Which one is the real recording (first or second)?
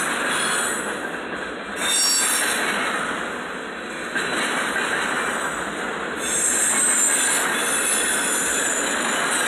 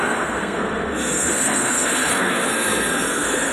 first